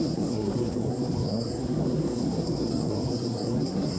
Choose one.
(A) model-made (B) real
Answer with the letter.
A